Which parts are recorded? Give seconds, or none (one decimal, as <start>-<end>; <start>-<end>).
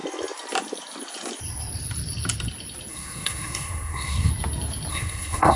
0.0-2.9; 4.3-4.9